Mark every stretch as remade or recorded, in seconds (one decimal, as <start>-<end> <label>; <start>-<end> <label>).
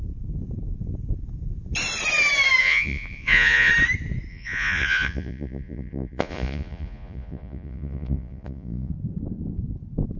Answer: 0.0-2.6 recorded; 2.6-3.7 remade; 3.7-4.3 recorded; 4.3-8.9 remade; 8.9-10.2 recorded